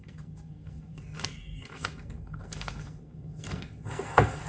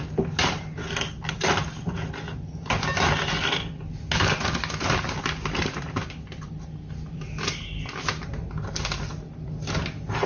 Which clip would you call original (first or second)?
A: second